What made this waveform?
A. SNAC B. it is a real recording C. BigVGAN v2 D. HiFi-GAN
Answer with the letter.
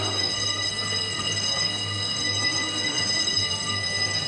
A